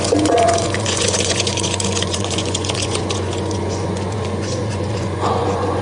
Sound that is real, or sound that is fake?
fake